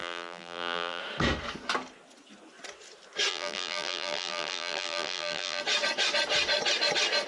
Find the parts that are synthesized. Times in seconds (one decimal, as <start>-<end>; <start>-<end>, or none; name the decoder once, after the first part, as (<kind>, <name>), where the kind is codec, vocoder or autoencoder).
0.0-1.0 (vocoder, BigVGAN v2); 3.3-5.6